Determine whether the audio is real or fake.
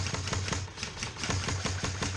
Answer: real